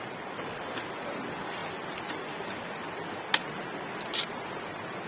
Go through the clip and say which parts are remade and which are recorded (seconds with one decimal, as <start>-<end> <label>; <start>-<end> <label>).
0.0-5.1 recorded

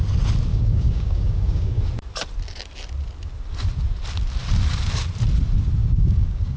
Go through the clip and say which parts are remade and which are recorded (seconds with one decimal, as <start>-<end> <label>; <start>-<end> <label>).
0.0-0.5 recorded; 0.5-1.8 remade; 1.8-5.8 recorded; 5.8-6.6 remade